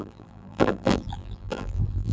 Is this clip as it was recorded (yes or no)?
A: no